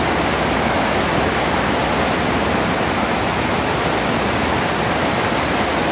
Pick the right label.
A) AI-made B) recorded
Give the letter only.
B